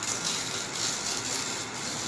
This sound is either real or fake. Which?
real